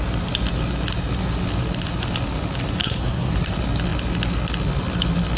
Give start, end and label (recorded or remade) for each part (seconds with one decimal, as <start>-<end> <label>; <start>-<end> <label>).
0.0-2.8 recorded; 2.8-3.3 remade; 3.3-5.4 recorded

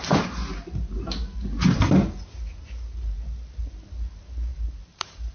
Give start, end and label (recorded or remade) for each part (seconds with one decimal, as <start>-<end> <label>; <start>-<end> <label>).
0.0-4.5 recorded; 4.5-5.3 remade